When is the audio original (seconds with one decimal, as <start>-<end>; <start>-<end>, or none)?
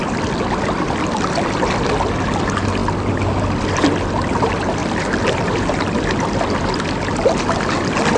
0.0-4.8; 6.2-8.2